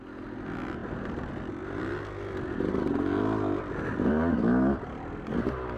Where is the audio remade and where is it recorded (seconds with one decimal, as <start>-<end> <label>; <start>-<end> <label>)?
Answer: 0.0-5.8 recorded